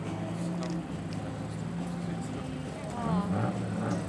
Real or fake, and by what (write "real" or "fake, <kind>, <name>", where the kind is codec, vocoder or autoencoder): real